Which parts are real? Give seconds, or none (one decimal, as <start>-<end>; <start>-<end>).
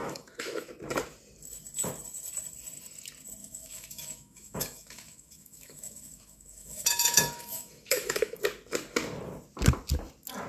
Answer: 0.7-3.4; 8.4-10.5